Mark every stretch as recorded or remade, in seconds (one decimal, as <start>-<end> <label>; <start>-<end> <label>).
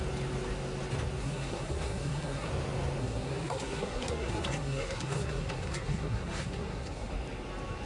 0.0-1.2 recorded; 1.2-2.5 remade; 2.5-3.0 recorded; 3.0-7.1 remade; 7.1-7.9 recorded